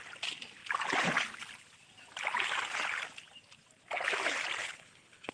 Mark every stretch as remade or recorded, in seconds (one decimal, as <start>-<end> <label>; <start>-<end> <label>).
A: 0.0-4.6 recorded; 4.6-5.3 remade